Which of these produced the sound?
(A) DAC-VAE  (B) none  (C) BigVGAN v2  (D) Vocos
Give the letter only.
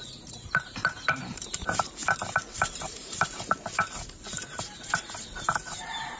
C